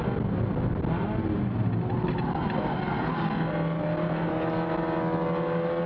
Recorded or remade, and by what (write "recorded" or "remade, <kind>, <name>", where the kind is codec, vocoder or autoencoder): recorded